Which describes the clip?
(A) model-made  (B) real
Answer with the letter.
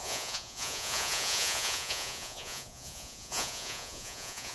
A